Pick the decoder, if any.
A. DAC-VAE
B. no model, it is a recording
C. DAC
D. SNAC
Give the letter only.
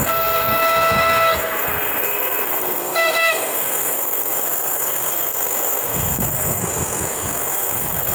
D